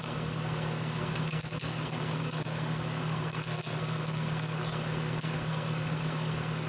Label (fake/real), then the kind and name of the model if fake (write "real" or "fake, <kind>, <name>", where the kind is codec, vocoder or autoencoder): fake, codec, SNAC